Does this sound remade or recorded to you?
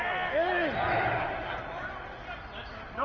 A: recorded